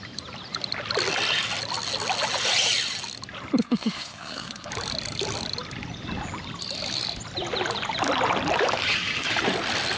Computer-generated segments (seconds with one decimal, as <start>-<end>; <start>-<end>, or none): 3.6-4.7